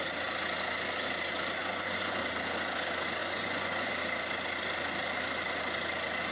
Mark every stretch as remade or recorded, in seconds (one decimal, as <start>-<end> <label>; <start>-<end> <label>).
0.0-1.6 recorded; 1.6-2.2 remade; 2.2-3.2 recorded; 3.2-3.9 remade; 3.9-6.3 recorded